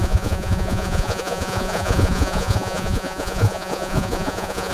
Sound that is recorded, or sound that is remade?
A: remade